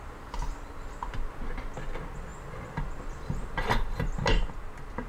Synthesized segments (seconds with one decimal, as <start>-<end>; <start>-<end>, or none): none